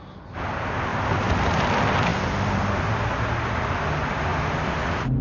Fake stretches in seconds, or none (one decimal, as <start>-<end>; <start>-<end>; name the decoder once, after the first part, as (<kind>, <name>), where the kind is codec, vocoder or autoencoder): none